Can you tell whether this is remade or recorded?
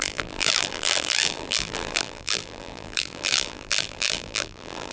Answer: remade